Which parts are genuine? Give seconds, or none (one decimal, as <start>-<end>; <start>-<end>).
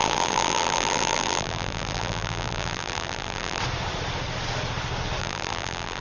3.6-5.2